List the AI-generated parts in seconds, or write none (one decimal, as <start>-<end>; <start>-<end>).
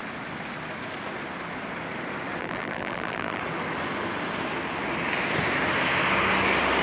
2.4-3.4